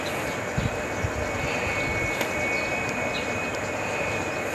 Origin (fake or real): real